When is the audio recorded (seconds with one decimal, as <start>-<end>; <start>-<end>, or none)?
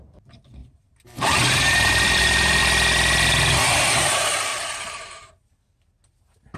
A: 0.0-0.6; 2.6-4.5; 5.3-6.6